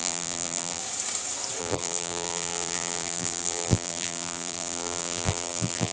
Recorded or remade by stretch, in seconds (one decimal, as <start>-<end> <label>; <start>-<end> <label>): 0.0-0.8 remade; 0.8-1.6 recorded; 1.6-5.9 remade